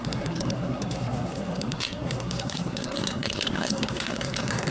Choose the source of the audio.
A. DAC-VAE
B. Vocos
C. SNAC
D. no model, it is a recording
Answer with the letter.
C